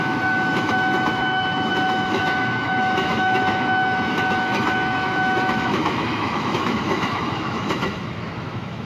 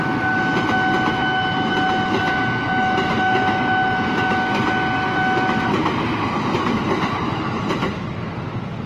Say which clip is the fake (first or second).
first